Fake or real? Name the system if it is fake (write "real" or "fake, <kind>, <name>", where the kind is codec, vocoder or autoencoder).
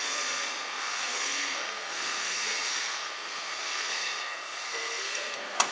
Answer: fake, codec, SNAC